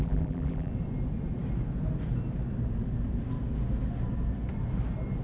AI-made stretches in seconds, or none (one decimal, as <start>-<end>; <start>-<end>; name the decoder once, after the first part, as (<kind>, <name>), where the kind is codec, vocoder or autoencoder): 0.0-0.7 (vocoder, BigVGAN v2)